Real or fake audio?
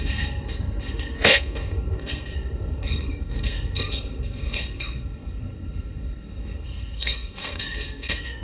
fake